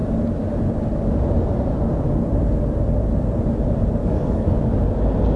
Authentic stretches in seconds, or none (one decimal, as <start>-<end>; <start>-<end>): 0.0-4.0; 4.6-5.4